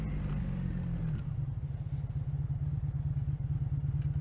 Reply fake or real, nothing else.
real